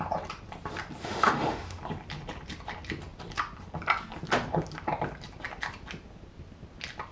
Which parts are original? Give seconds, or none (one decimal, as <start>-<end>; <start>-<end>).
0.0-1.0; 1.8-7.1